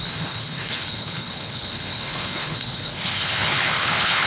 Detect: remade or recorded remade